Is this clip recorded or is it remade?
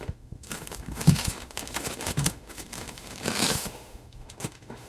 remade